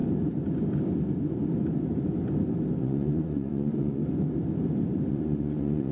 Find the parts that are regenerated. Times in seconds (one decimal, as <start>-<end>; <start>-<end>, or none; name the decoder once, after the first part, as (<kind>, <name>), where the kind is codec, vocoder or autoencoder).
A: 2.8-4.0 (vocoder, Vocos); 5.1-5.9